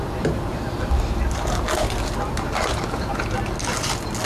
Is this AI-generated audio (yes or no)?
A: no